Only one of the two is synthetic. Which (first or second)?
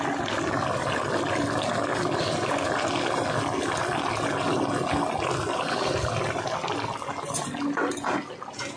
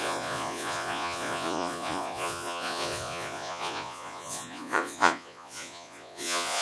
second